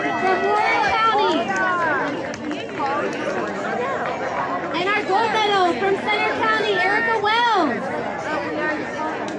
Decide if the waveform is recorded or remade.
recorded